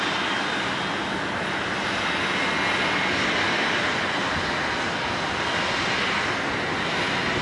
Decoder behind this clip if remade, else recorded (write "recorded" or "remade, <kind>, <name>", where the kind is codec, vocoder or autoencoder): recorded